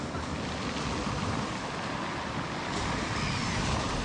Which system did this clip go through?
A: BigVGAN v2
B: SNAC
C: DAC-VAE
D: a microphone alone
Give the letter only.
D